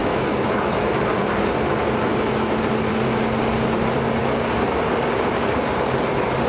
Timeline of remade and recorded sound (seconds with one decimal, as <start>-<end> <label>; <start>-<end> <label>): 0.0-0.9 remade; 0.9-6.5 recorded